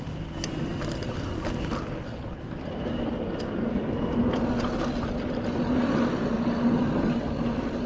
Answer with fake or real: real